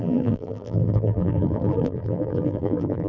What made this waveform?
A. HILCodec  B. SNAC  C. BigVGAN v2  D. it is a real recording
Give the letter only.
C